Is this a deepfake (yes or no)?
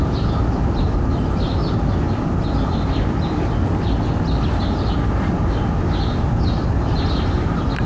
no